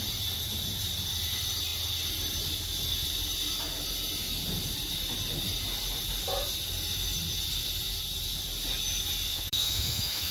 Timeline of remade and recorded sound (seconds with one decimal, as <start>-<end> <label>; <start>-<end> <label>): 0.0-9.3 recorded; 9.3-10.3 remade